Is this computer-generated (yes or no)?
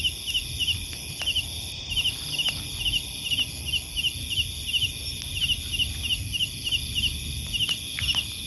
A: no